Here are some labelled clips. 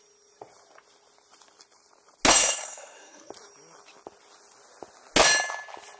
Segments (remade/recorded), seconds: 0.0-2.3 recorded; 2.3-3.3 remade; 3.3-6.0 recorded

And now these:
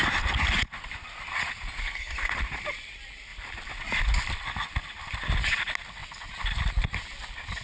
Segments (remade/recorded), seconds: 0.0-1.8 recorded; 1.8-2.3 remade; 2.3-7.6 recorded

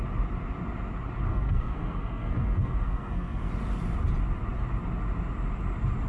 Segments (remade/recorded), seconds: 0.0-1.3 recorded; 1.3-3.5 remade; 3.5-6.1 recorded

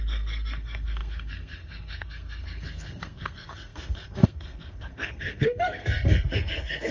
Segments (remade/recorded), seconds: 0.0-6.9 remade

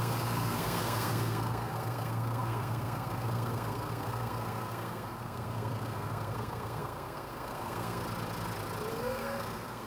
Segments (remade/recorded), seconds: 0.0-8.0 remade; 8.0-8.9 recorded; 8.9-9.9 remade

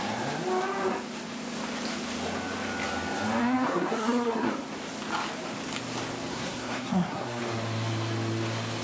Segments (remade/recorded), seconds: 0.0-3.4 recorded; 3.4-4.5 remade; 4.5-6.3 recorded; 6.3-7.4 remade; 7.4-8.8 recorded